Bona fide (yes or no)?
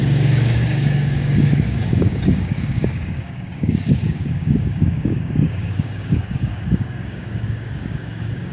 no